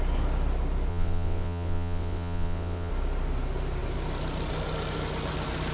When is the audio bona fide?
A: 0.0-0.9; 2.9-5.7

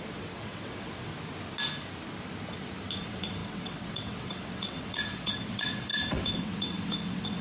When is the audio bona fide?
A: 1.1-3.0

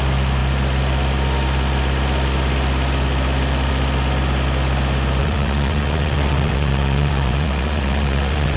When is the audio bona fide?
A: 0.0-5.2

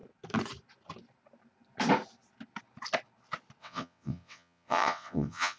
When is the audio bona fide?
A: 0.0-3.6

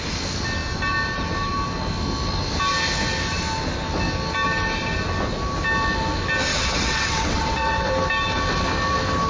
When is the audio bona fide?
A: 0.0-6.5; 7.9-9.3

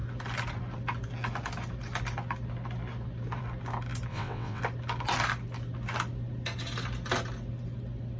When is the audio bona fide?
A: 0.0-4.1; 4.6-8.2

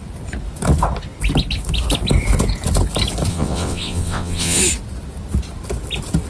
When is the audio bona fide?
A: 0.0-3.3; 4.6-6.3

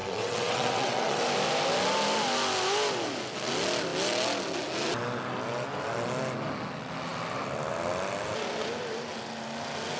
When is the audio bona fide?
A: 1.2-10.0